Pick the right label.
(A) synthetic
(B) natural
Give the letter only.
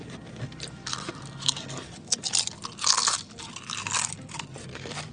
B